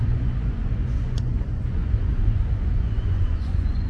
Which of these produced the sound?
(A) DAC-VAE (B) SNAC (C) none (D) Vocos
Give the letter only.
D